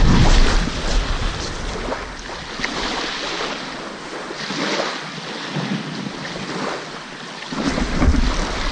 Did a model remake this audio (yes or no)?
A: no